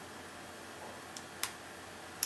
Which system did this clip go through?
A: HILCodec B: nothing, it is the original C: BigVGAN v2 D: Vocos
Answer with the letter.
B